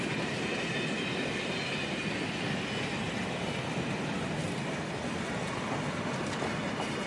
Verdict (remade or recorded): recorded